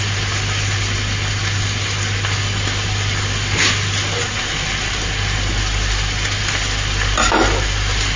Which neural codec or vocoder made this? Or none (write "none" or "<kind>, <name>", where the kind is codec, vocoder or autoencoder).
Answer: none